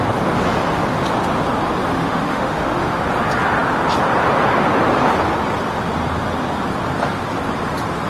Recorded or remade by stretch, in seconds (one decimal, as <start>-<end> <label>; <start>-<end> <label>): 0.0-1.9 recorded; 1.9-3.0 remade; 3.0-8.1 recorded